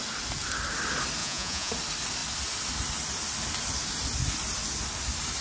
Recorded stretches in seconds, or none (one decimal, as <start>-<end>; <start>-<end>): 0.0-1.2; 1.7-5.4